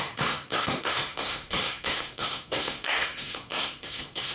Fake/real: fake